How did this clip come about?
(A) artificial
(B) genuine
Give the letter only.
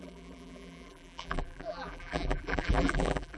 A